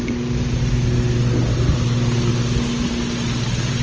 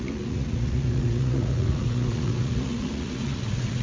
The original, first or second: first